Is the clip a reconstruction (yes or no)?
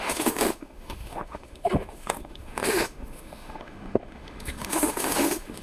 yes